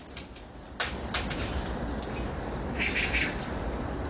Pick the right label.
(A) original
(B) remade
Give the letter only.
A